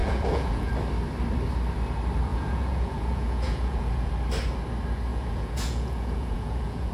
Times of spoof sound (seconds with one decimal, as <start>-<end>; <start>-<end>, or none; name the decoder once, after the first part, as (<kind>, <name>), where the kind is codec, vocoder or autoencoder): 0.0-0.7 (vocoder, Vocos); 2.3-4.1; 5.1-6.9